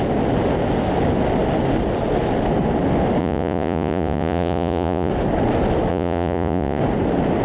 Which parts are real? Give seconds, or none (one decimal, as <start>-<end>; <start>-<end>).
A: 0.0-3.2; 5.1-5.9; 6.8-7.4